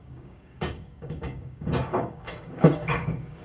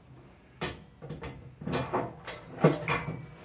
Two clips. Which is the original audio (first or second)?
second